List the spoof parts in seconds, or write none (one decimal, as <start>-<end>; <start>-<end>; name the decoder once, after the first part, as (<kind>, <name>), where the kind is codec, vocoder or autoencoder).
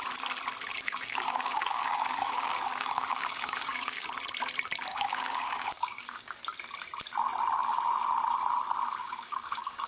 0.7-4.1 (codec, DAC); 4.9-6.4; 9.0-9.9